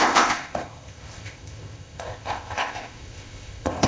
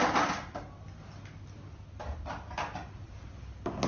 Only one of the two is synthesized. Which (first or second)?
first